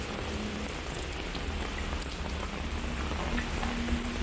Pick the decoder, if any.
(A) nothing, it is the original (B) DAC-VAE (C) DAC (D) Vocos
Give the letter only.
A